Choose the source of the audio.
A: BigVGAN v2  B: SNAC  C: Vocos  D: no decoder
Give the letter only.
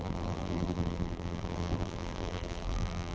A